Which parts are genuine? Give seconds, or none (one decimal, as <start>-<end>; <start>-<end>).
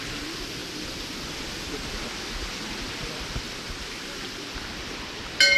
0.0-5.6